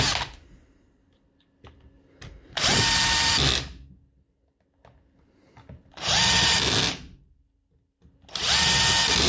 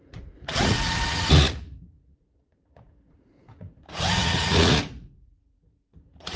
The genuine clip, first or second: first